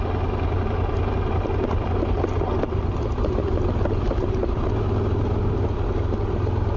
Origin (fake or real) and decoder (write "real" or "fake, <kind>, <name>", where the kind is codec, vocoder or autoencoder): real